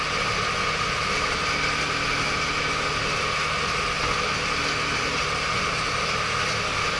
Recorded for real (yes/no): yes